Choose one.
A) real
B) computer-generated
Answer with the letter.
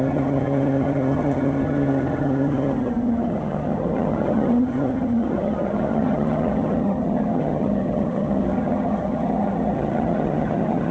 B